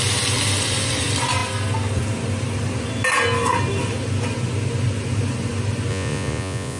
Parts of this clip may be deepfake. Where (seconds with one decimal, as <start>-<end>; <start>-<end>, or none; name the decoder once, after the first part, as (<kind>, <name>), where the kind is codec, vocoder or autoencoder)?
5.9-6.8 (vocoder, Vocos)